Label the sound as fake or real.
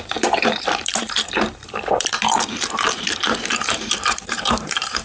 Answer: fake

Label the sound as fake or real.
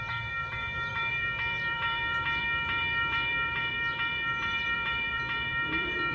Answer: fake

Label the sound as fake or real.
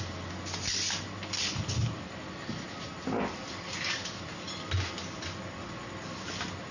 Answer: real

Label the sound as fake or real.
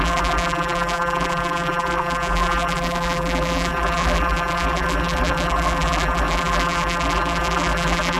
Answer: fake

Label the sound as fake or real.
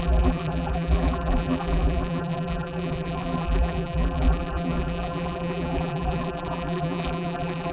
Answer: fake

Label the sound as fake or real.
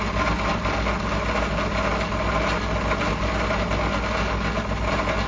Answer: real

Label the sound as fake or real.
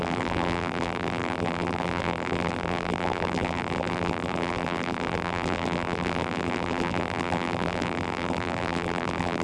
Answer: fake